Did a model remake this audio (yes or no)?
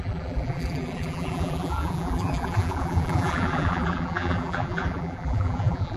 yes